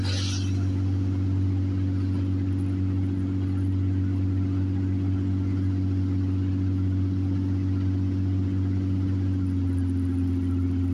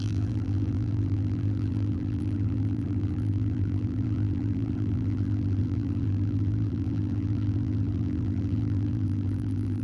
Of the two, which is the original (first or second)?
first